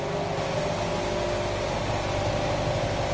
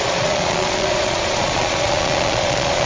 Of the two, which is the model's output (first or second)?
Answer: second